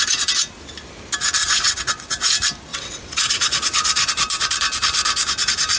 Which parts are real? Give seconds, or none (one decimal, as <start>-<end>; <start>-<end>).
0.0-1.4; 2.3-2.7; 4.1-5.8